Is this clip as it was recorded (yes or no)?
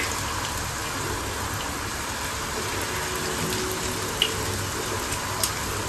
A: yes